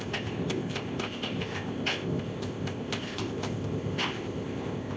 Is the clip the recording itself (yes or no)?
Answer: no